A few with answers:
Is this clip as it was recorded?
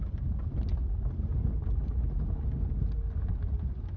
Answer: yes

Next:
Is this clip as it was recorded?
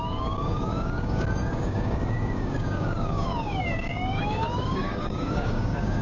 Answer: no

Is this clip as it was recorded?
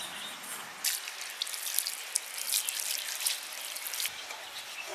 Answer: yes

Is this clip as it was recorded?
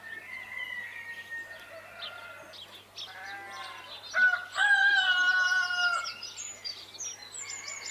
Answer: yes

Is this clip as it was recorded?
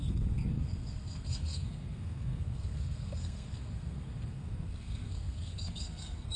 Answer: no